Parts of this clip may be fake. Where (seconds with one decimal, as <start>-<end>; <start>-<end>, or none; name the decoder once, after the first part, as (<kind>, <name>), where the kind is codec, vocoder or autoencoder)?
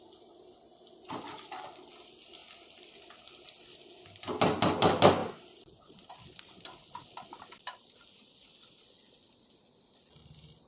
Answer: none